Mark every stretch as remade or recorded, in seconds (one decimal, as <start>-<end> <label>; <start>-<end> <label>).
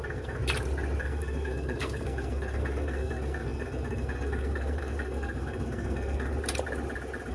0.0-0.4 remade; 0.4-1.0 recorded; 1.0-6.3 remade; 6.3-7.3 recorded